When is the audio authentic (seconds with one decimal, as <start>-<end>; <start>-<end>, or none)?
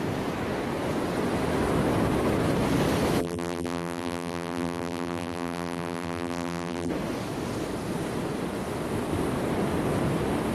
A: 0.0-3.2; 6.9-10.5